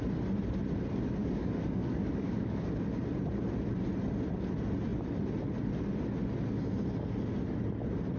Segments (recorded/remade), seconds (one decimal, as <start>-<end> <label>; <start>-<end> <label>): 0.0-1.2 recorded; 1.2-2.6 remade; 2.6-8.2 recorded